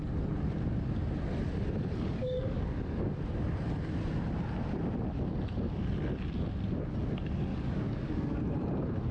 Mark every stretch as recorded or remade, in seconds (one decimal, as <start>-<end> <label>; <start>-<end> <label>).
0.0-2.2 recorded; 2.2-3.2 remade; 3.2-7.5 recorded; 7.5-8.4 remade; 8.4-9.1 recorded